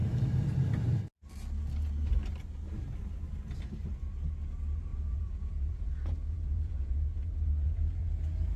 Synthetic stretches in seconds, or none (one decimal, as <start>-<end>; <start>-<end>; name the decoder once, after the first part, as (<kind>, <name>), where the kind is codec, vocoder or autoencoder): 4.9-8.1 (vocoder, Vocos)